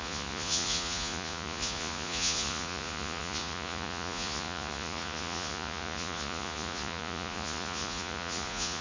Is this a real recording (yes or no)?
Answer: no